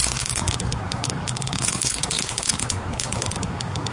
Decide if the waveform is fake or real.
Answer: fake